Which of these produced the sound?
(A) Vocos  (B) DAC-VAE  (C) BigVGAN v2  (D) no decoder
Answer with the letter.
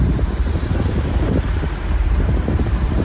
C